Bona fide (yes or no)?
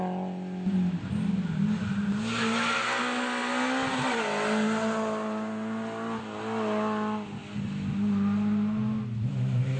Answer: yes